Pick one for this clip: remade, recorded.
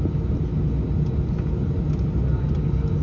recorded